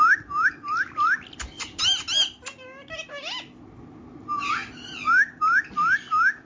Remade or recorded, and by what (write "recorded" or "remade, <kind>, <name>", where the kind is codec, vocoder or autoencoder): recorded